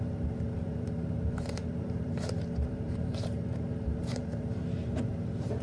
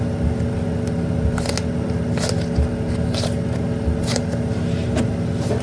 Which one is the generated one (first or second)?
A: first